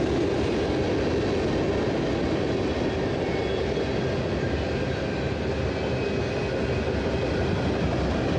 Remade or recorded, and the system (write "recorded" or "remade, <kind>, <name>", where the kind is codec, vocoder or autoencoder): recorded